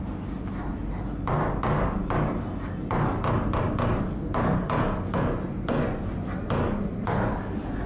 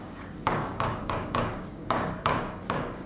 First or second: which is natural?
first